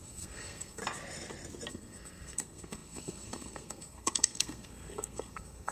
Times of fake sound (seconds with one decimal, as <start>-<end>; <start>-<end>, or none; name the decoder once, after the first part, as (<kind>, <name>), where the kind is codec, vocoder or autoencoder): 0.0-0.8 (codec, SNAC); 1.7-5.7

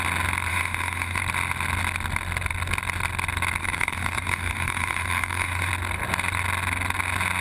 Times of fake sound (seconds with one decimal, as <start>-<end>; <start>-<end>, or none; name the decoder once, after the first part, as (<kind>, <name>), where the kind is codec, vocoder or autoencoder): 0.5-1.2 (autoencoder, DAC-VAE); 3.6-5.7

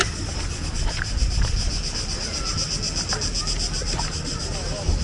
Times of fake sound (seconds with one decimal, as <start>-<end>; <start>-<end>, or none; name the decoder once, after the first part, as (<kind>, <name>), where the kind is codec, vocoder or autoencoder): 3.8-4.4 (vocoder, BigVGAN v2)

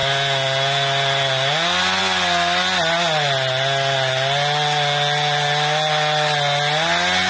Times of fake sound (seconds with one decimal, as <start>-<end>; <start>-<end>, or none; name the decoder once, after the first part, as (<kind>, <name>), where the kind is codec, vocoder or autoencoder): none

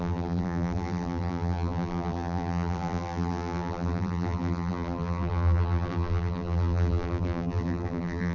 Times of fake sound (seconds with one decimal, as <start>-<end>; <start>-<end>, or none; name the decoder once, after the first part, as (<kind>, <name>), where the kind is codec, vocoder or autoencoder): 0.0-8.3 (vocoder, BigVGAN v2)

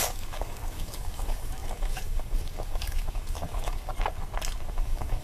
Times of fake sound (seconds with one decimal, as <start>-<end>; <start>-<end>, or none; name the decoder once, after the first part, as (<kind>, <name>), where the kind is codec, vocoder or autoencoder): 0.0-3.9 (codec, DAC); 4.7-5.2

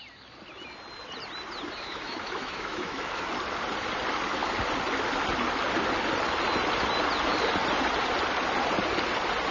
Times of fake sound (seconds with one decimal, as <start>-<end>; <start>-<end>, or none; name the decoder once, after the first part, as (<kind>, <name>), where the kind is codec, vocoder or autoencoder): 1.9-3.2 (autoencoder, DAC-VAE)